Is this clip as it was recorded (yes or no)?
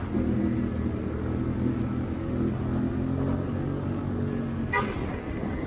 yes